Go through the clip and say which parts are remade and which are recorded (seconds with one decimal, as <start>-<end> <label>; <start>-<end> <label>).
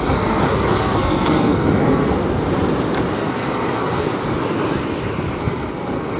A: 0.0-2.2 remade; 2.2-3.1 recorded; 3.1-4.1 remade; 4.1-5.4 recorded; 5.4-6.2 remade